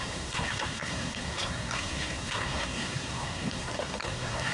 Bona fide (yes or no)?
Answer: no